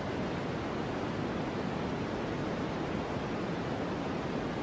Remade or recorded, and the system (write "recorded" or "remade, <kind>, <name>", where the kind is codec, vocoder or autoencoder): recorded